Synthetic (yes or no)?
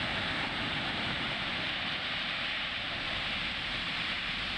yes